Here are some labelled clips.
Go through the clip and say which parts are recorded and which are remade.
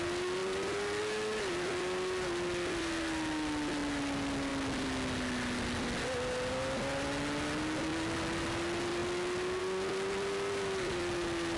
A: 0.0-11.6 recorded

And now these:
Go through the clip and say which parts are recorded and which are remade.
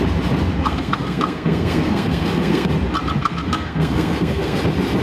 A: 0.0-0.6 recorded; 0.6-2.7 remade; 2.7-3.2 recorded; 3.2-4.6 remade; 4.6-5.0 recorded